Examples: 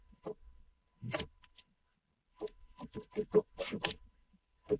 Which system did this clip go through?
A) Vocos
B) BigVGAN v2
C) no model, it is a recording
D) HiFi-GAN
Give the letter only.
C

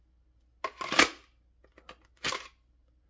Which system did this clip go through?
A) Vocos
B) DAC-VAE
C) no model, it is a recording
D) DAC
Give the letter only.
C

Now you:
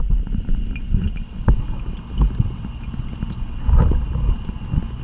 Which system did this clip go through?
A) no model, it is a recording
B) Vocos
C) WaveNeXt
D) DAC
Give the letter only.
A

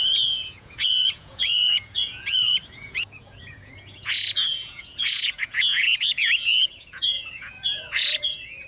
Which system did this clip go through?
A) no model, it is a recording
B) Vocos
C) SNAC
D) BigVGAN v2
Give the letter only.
B